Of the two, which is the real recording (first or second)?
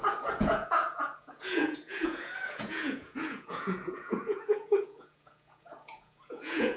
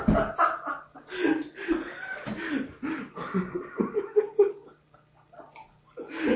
second